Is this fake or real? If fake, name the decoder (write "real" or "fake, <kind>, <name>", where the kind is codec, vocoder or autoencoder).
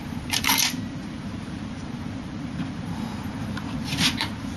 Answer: fake, vocoder, BigVGAN v2